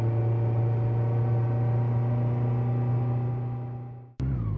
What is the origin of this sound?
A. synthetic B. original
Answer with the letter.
B